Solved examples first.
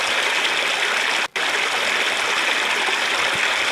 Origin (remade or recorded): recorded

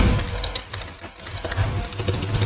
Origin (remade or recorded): recorded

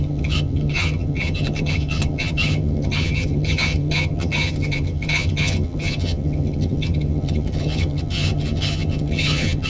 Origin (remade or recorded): remade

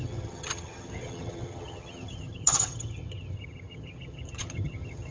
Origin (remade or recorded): remade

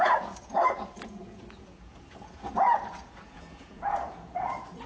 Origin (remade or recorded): remade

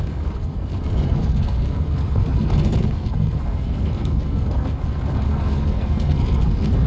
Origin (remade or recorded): remade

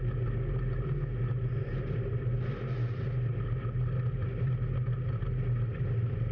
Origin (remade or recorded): recorded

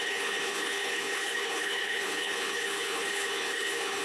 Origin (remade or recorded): remade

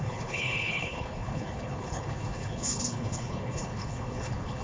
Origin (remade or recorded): remade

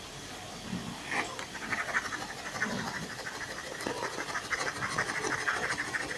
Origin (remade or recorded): recorded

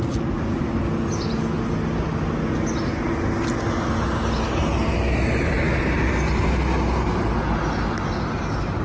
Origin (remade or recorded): recorded